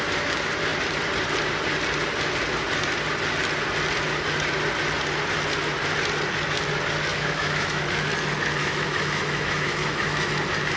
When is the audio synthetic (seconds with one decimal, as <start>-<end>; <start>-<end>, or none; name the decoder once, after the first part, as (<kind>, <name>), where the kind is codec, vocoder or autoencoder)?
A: 7.1-7.8 (autoencoder, DAC-VAE); 8.6-10.3